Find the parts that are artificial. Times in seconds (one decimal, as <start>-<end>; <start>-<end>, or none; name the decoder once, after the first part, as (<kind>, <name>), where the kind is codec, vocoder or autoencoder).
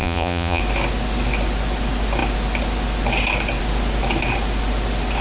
0.0-0.6 (vocoder, Vocos)